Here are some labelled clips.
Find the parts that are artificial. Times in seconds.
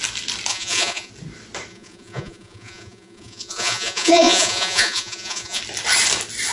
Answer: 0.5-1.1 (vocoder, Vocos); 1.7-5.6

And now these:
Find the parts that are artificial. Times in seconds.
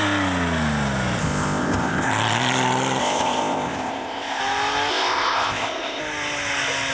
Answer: 1.2-2.1 (codec, ZipCodec); 3.0-4.4; 4.9-6.0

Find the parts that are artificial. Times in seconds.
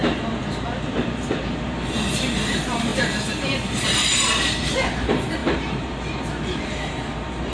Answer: 0.0-7.5 (vocoder, BigVGAN v2)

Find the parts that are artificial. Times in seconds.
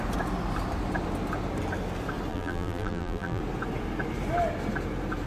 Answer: 2.3-3.4 (vocoder, BigVGAN v2)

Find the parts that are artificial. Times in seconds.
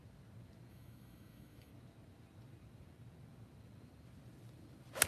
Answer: 0.7-1.7 (autoencoder, DAC-VAE)